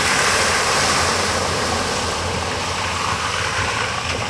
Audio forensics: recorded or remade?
recorded